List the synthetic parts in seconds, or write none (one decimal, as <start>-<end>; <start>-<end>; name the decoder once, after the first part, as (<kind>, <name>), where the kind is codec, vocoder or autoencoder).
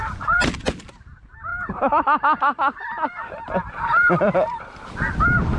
none